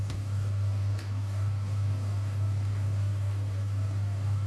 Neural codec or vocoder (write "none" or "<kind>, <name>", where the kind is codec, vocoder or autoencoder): codec, DAC